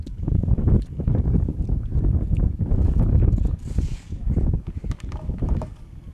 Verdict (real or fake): fake